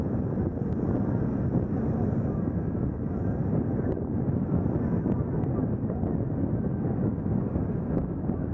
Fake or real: real